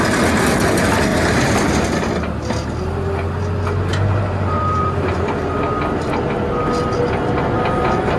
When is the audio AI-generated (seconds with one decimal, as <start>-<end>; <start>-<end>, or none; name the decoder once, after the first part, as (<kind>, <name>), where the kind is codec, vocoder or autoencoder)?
1.1-1.7 (vocoder, BigVGAN v2); 3.9-5.2